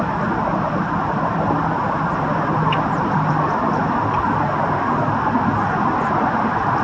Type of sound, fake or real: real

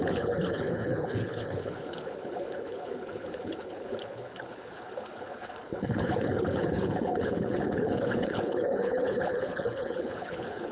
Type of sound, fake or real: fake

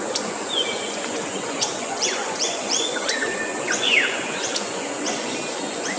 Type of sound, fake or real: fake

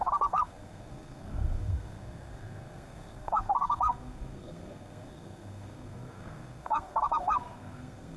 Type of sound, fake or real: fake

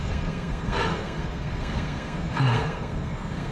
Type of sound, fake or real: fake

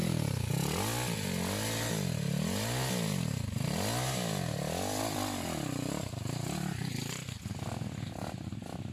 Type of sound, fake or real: real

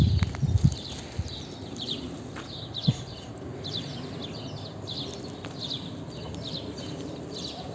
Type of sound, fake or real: real